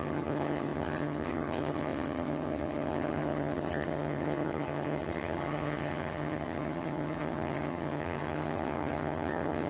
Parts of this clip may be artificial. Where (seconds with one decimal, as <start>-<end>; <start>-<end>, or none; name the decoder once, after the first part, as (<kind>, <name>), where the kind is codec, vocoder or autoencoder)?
0.0-9.7 (vocoder, HiFi-GAN)